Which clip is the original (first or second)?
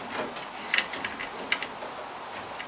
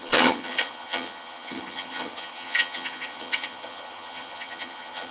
first